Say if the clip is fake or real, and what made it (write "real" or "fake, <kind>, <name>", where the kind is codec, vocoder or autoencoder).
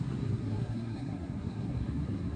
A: fake, codec, SNAC